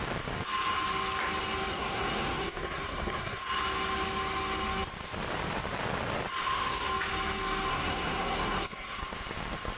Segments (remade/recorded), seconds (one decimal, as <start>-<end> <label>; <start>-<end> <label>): 0.0-1.7 recorded; 1.7-3.4 remade; 3.4-6.4 recorded; 6.4-6.9 remade; 6.9-7.7 recorded; 7.7-9.0 remade; 9.0-9.8 recorded